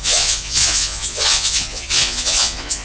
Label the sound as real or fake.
fake